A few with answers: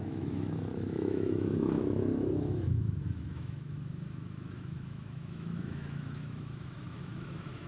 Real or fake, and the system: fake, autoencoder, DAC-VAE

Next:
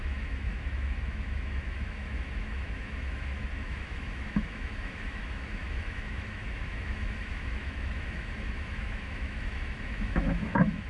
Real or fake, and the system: fake, autoencoder, DAC-VAE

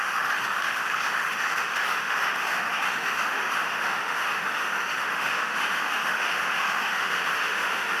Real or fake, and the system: fake, autoencoder, DAC-VAE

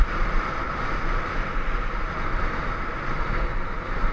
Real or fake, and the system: real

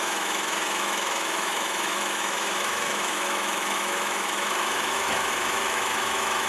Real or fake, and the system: fake, autoencoder, DAC-VAE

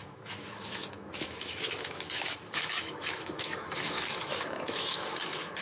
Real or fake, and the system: fake, autoencoder, DAC-VAE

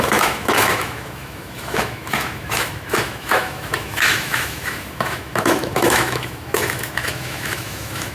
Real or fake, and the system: fake, autoencoder, DAC-VAE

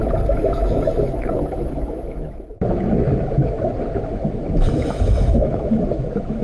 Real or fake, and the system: fake, autoencoder, DAC-VAE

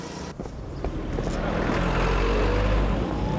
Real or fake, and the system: real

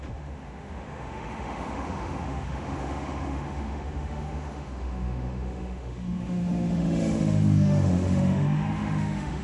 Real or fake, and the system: fake, autoencoder, DAC-VAE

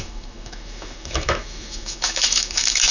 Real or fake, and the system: fake, autoencoder, DAC-VAE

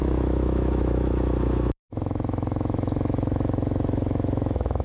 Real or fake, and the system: fake, autoencoder, DAC-VAE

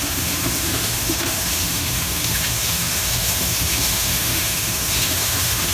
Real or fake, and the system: fake, autoencoder, DAC-VAE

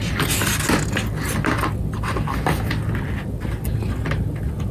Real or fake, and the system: real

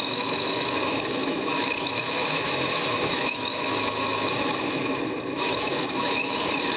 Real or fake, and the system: fake, autoencoder, DAC-VAE